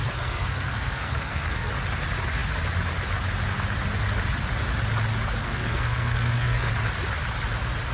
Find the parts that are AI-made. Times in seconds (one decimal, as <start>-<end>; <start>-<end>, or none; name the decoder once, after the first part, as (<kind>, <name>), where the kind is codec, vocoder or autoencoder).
0.0-1.7 (codec, SNAC); 5.4-6.7